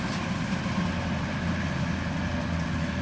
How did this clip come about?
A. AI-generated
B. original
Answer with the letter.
B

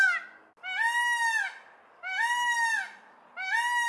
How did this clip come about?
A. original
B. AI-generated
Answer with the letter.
A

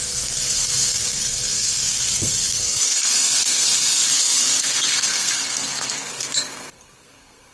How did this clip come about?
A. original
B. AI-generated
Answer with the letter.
B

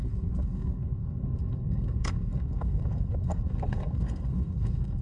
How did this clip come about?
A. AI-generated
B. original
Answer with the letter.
A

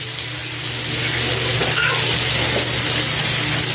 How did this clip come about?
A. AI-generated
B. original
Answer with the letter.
B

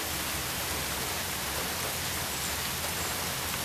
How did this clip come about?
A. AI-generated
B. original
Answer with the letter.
B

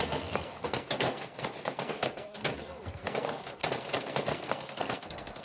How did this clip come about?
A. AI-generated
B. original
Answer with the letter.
A